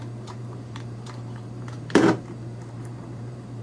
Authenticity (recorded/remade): remade